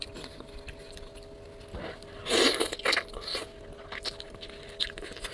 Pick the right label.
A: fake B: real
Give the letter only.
B